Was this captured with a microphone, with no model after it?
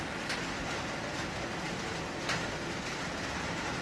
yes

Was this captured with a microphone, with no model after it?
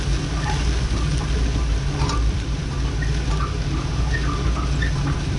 yes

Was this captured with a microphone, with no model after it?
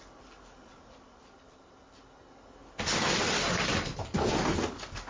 yes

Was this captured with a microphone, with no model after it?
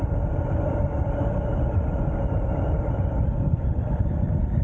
yes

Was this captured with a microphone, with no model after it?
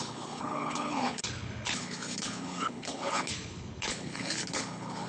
no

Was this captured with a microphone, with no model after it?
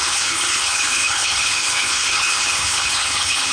no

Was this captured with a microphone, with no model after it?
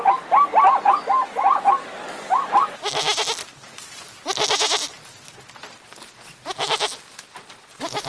yes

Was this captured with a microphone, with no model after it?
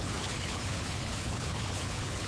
no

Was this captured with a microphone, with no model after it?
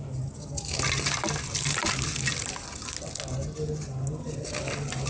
yes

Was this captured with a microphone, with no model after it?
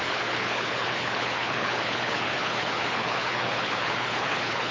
no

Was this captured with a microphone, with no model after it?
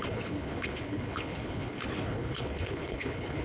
no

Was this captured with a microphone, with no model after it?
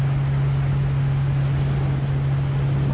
yes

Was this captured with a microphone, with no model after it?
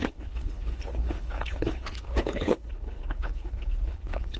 no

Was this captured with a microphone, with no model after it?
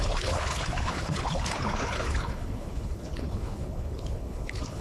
no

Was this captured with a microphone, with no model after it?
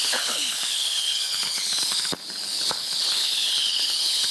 no